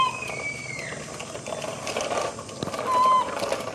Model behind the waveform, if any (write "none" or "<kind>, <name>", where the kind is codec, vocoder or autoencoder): none